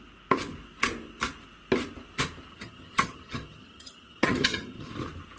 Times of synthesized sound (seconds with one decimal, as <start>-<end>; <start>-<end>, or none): 2.5-4.9